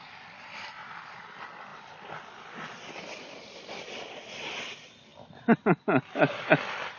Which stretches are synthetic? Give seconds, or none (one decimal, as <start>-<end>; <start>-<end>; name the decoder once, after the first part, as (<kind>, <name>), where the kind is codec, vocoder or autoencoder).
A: none